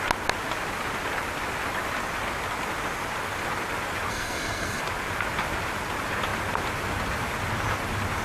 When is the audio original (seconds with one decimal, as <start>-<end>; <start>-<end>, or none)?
0.0-4.1; 4.8-8.2